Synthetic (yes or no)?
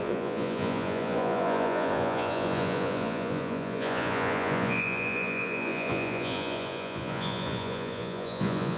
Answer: yes